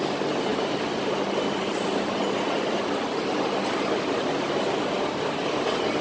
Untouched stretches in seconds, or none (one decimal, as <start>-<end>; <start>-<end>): 0.0-6.0